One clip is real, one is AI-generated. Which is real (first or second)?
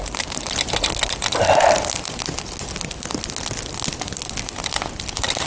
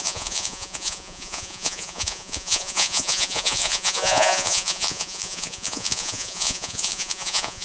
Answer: first